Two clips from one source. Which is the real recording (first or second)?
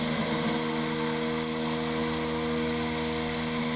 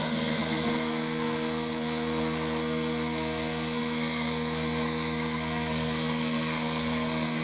first